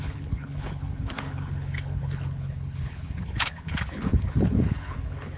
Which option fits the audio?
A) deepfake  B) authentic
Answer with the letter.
A